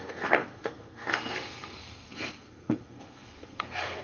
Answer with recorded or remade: remade